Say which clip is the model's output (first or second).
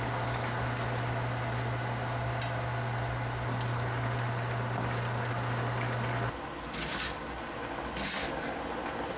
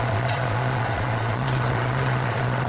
second